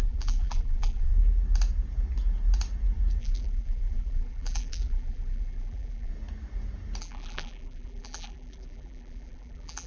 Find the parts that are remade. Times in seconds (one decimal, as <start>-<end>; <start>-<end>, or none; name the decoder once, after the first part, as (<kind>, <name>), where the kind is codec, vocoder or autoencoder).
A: 0.0-1.1 (vocoder, BigVGAN v2); 3.2-6.1; 7.0-9.9